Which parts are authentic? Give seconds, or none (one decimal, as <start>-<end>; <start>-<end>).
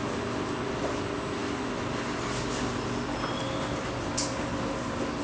0.0-5.2